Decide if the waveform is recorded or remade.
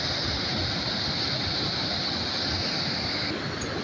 recorded